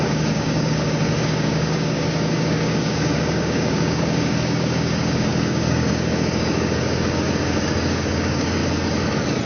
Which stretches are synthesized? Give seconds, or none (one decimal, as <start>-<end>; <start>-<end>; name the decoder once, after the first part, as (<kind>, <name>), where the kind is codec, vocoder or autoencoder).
0.0-8.6 (codec, DAC)